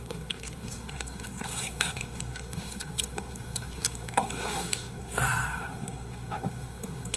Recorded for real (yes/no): no